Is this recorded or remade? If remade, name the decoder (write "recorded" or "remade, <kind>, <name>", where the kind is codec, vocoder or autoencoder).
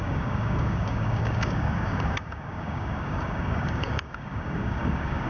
remade, codec, DAC